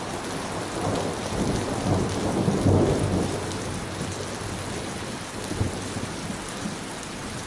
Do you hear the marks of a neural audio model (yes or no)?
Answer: no